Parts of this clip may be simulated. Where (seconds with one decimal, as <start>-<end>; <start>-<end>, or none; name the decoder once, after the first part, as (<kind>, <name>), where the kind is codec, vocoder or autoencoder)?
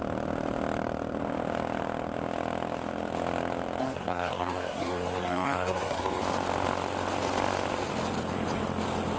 3.8-6.2 (codec, SNAC)